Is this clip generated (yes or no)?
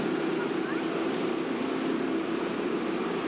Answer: no